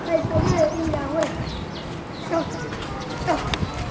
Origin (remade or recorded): recorded